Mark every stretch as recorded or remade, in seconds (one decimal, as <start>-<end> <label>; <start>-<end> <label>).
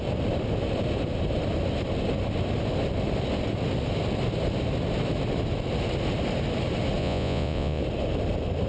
0.0-7.0 recorded; 7.0-7.8 remade; 7.8-8.7 recorded